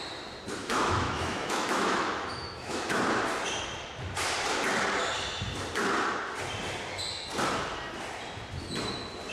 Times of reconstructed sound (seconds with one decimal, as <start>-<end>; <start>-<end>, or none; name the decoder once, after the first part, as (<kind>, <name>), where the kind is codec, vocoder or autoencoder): 0.6-3.0 (autoencoder, DAC-VAE)